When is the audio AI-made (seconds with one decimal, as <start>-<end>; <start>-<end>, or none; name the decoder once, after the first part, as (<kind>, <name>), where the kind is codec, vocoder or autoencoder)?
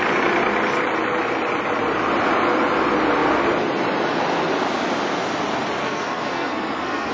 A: 5.8-7.1 (codec, SNAC)